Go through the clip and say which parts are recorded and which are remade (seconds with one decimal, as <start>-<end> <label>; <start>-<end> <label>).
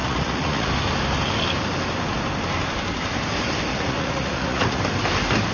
0.0-0.7 remade; 0.7-3.7 recorded; 3.7-4.8 remade; 4.8-5.5 recorded